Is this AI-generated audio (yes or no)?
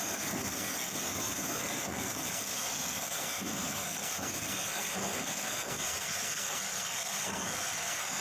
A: yes